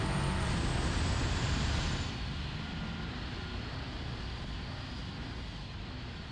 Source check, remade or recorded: recorded